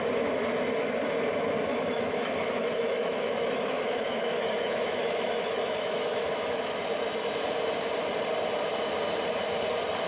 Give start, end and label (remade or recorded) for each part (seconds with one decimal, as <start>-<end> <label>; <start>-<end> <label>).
0.0-1.7 recorded; 1.7-6.8 remade; 6.8-10.1 recorded